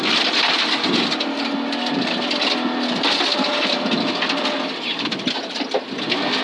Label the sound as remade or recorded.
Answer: recorded